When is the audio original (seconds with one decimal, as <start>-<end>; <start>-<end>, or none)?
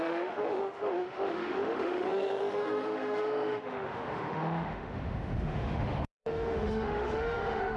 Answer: none